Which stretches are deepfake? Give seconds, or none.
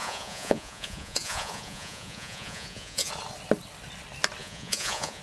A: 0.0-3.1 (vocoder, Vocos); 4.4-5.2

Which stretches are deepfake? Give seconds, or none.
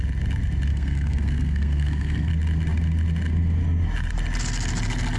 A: 0.7-2.3 (codec, SNAC)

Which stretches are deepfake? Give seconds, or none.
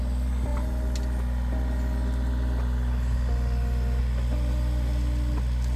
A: none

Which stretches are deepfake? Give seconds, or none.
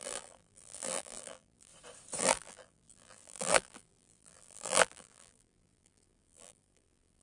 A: 0.0-1.7 (vocoder, BigVGAN v2); 2.2-7.2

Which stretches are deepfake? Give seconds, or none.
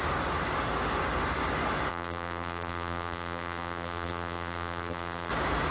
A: 1.9-5.3 (vocoder, BigVGAN v2)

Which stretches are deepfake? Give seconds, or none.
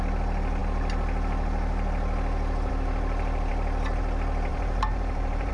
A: 4.5-5.5 (vocoder, BigVGAN v2)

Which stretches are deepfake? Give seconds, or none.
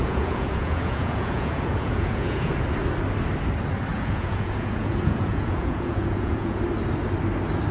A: 0.0-2.5 (vocoder, Vocos); 3.9-6.6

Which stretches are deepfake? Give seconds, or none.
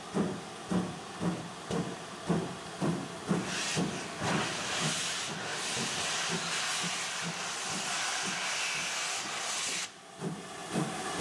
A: none